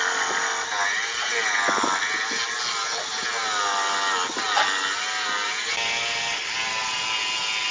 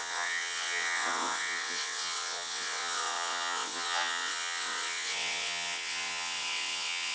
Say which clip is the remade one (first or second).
second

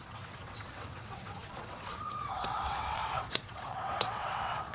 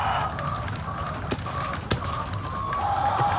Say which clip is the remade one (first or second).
first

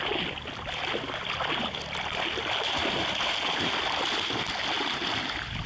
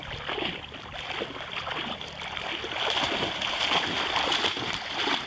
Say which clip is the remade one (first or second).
second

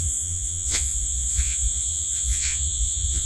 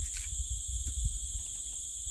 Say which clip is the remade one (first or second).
first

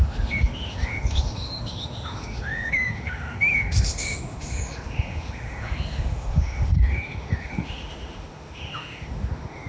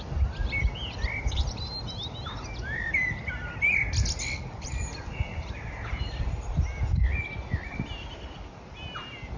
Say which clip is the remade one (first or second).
first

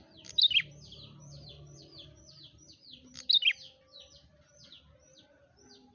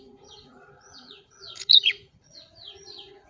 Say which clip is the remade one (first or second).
second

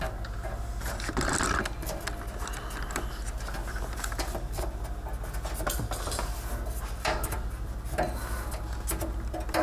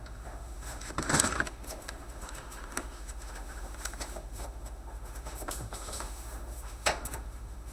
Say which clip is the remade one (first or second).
second